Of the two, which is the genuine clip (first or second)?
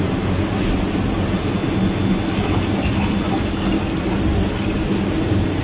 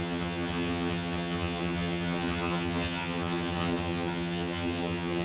first